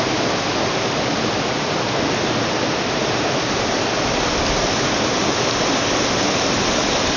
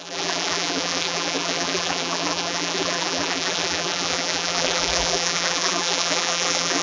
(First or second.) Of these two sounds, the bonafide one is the first